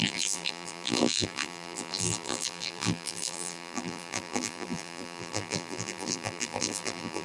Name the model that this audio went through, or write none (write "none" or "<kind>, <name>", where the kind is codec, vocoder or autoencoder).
vocoder, BigVGAN v2